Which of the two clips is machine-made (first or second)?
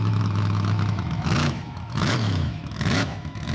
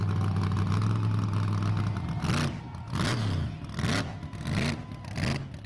first